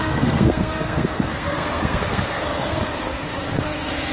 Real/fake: fake